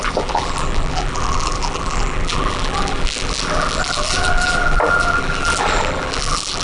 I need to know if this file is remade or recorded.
remade